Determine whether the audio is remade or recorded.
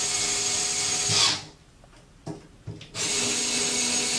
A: recorded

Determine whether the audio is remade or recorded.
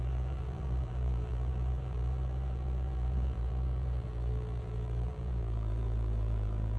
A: remade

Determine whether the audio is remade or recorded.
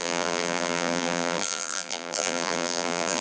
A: remade